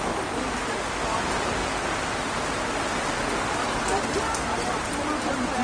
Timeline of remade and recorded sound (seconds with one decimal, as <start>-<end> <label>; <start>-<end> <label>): 0.0-5.6 recorded